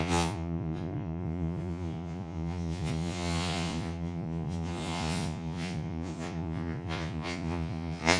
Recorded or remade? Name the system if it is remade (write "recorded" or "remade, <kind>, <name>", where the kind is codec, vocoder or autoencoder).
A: remade, vocoder, Vocos